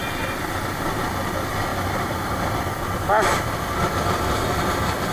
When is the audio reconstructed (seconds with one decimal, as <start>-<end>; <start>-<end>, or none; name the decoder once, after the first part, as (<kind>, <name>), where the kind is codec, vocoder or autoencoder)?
1.7-2.5 (vocoder, BigVGAN v2)